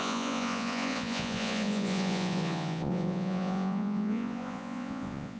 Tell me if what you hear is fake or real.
fake